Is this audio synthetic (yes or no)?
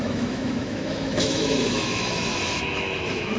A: yes